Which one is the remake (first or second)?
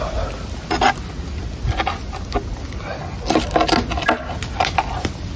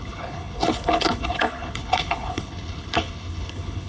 second